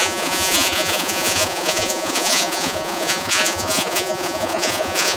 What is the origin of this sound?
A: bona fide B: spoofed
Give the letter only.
B